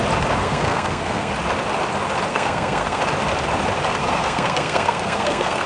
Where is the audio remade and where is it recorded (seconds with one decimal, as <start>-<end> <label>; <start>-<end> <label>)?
0.0-0.4 recorded; 0.4-1.3 remade; 1.3-2.3 recorded; 2.3-3.0 remade; 3.0-3.9 recorded; 3.9-5.7 remade